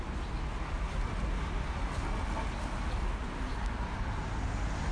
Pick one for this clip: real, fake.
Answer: real